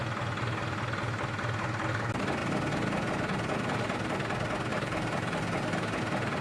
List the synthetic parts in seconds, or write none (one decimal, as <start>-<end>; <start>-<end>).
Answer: 4.7-6.0